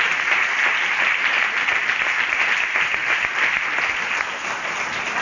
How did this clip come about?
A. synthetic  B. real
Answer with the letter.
B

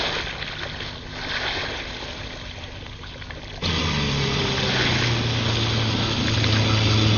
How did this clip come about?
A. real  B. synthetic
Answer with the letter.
A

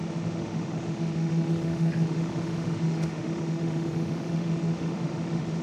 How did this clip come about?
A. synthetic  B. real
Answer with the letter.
A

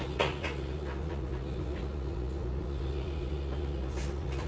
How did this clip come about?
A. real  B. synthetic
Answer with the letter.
B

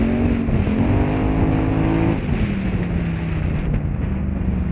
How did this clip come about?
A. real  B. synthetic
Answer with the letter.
A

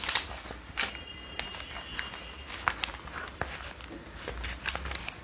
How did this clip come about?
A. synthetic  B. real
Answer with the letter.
B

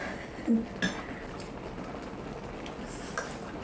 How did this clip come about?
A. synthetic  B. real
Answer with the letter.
B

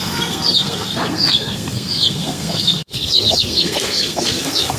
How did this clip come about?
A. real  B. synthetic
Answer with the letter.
B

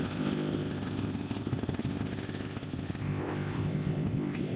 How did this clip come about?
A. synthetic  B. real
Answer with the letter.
A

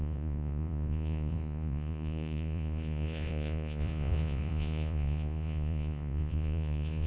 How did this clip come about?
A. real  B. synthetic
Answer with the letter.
B